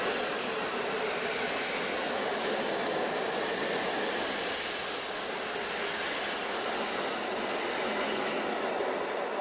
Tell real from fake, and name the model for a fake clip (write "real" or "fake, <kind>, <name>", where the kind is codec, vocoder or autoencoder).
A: real